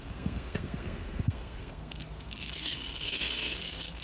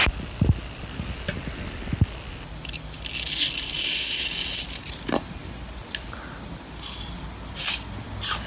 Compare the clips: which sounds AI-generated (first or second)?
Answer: first